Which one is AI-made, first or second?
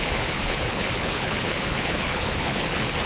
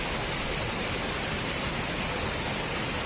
first